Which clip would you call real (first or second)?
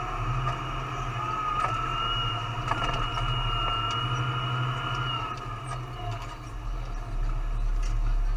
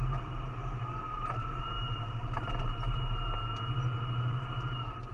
first